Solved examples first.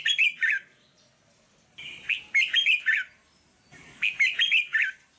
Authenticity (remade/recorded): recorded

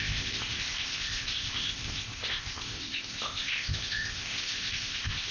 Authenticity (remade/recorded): remade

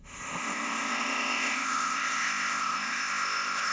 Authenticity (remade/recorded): remade